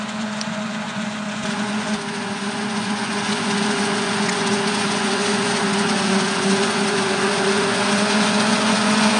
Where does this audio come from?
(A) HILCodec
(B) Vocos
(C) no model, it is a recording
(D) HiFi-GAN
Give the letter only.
B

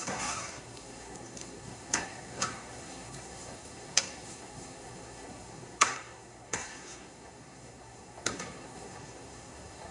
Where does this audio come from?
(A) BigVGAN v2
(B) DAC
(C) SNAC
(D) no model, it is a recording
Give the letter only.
C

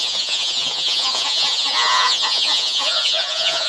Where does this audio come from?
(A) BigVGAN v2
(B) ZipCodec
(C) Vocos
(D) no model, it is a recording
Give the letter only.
C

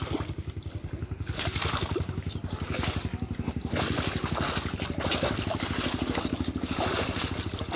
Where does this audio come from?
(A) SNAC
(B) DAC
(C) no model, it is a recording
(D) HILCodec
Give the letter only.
C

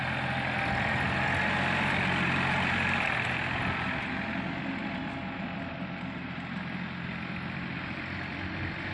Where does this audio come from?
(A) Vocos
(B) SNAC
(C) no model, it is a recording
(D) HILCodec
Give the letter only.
C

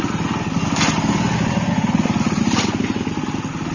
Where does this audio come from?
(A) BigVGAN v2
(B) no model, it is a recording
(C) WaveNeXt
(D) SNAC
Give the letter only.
B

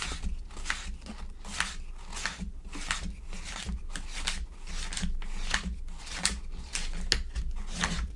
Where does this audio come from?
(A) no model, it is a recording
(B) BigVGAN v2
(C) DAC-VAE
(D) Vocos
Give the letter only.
A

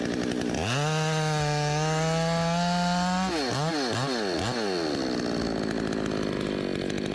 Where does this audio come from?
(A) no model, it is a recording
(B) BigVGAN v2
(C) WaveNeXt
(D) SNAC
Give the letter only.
A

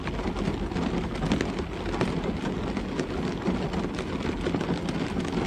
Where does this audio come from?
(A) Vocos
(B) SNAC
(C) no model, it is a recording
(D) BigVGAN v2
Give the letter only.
C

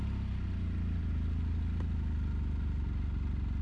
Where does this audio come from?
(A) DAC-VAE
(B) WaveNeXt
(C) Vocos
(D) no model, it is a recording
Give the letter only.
D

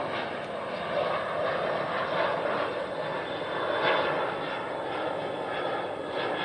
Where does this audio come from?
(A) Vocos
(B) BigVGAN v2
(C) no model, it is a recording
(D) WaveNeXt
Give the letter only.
C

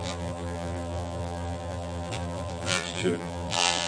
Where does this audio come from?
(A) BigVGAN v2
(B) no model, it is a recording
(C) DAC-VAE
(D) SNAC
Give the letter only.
A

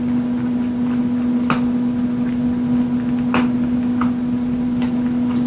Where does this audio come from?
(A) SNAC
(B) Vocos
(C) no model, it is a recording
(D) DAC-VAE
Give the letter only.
C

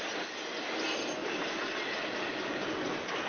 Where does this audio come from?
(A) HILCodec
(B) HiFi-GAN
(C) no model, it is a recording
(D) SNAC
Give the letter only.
C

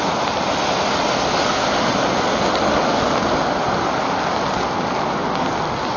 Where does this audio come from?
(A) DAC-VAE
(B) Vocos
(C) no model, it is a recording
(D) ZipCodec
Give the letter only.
C